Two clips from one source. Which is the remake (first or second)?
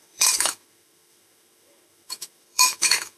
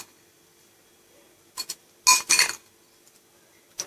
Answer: first